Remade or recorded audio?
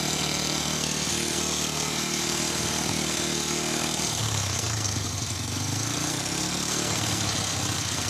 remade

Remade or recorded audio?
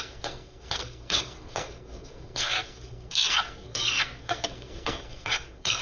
remade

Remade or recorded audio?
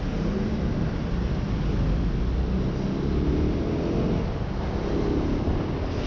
recorded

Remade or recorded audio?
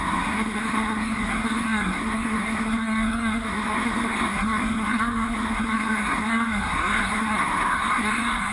remade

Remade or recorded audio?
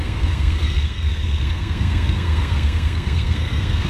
remade